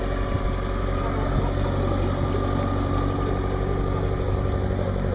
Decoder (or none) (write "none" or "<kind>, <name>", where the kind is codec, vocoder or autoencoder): none